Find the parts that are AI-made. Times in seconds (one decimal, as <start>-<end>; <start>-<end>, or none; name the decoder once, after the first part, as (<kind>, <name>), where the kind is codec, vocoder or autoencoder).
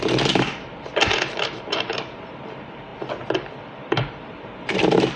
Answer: 0.0-2.9 (vocoder, BigVGAN v2); 3.8-5.2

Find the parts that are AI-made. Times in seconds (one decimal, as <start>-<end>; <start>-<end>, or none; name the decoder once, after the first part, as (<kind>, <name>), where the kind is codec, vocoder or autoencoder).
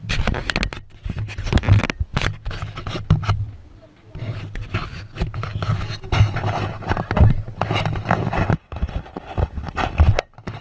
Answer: none